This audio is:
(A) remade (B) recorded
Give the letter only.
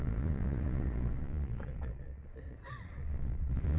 A